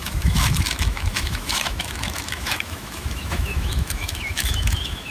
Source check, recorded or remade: remade